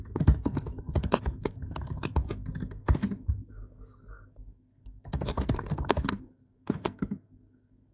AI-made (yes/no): yes